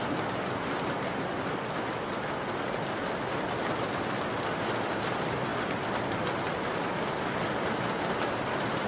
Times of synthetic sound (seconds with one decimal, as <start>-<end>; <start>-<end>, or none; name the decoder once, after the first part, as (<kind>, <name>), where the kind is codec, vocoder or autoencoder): none

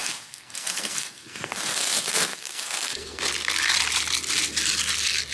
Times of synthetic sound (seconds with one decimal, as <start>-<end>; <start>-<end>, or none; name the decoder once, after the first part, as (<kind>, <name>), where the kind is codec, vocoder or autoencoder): 0.0-3.2 (codec, SNAC)

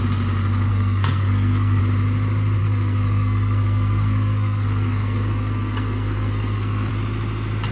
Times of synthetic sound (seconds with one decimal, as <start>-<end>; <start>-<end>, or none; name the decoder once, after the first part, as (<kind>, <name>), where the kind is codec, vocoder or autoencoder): 0.7-1.8 (codec, SNAC); 2.6-6.9

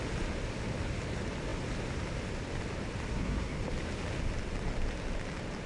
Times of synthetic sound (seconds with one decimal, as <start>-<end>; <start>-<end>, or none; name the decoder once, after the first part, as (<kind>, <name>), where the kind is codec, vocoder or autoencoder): 3.1-3.6 (codec, SNAC)

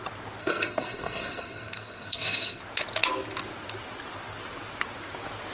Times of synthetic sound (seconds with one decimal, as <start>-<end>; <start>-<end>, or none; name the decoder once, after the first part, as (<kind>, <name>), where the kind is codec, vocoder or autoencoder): 0.4-2.6 (codec, SNAC)